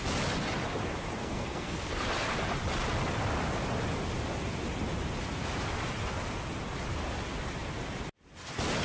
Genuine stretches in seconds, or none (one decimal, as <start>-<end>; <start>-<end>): 0.0-1.2; 1.9-8.8